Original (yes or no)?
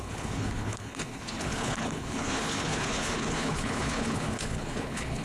no